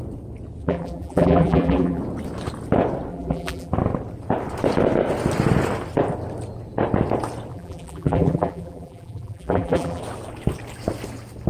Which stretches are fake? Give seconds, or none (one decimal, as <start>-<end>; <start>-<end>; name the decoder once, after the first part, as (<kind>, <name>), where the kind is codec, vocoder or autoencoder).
0.6-2.0 (vocoder, BigVGAN v2); 3.1-3.7; 7.5-10.0